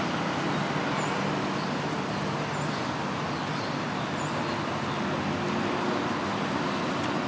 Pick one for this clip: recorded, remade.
recorded